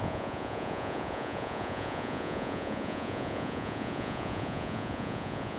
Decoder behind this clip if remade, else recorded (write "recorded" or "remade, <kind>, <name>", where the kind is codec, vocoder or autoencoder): remade, vocoder, Vocos